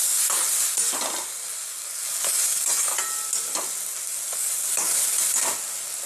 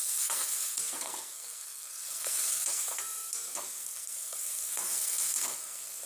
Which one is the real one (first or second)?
first